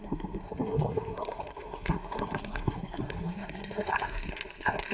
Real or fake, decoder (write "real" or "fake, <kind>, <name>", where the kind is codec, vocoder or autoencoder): fake, codec, SNAC